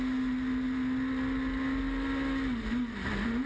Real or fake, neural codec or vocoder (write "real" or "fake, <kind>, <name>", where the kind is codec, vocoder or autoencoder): real